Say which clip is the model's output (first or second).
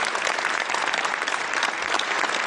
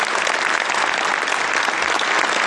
first